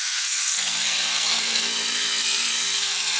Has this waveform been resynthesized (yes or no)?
yes